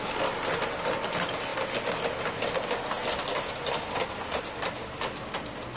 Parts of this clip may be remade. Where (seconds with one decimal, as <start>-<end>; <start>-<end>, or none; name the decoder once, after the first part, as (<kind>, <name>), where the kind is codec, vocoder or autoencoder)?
none